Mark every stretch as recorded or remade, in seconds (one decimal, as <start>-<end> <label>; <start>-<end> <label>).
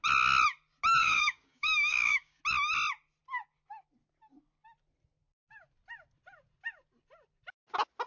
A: 0.0-1.0 recorded; 1.0-2.4 remade; 2.4-8.1 recorded